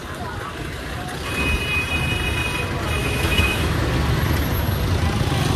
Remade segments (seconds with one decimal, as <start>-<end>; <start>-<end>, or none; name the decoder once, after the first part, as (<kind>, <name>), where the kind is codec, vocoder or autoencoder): 3.0-3.8 (autoencoder, DAC-VAE)